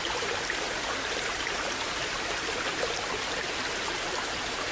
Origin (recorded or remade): recorded